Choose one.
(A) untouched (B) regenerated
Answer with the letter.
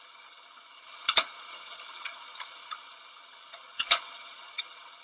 B